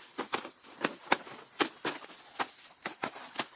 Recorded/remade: recorded